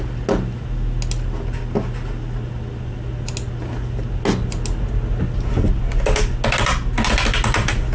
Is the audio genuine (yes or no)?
yes